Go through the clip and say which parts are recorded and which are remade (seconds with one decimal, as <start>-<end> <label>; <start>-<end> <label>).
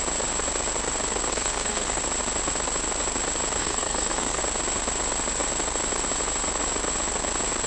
0.0-1.3 recorded; 1.3-2.0 remade; 2.0-3.6 recorded; 3.6-4.4 remade; 4.4-7.7 recorded